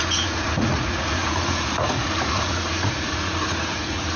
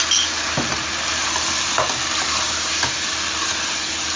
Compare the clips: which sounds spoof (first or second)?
first